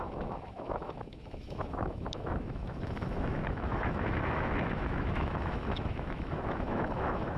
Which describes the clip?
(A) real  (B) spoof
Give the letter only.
B